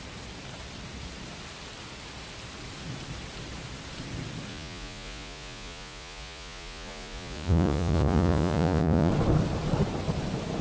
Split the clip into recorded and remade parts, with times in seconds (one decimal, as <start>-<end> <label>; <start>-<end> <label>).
0.0-4.5 recorded; 4.5-9.1 remade; 9.1-10.6 recorded